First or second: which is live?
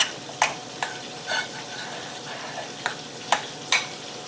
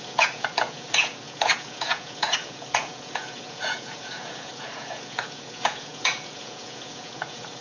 first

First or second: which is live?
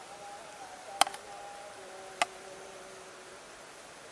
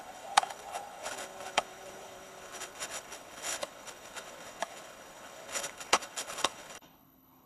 first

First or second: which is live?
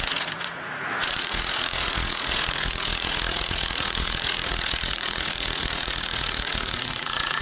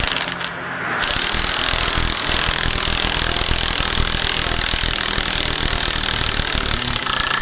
second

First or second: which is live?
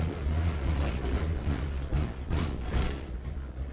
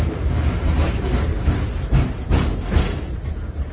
second